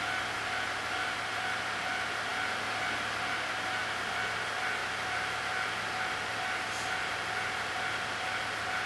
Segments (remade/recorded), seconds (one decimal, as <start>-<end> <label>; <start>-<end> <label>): 0.0-4.8 recorded; 4.8-5.4 remade; 5.4-8.9 recorded